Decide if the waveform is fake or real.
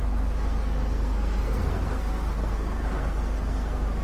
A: fake